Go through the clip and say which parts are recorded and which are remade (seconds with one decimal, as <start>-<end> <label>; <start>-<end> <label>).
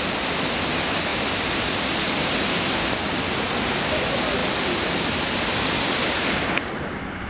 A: 0.0-7.3 recorded